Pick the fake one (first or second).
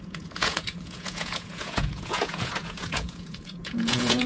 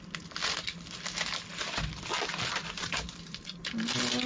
first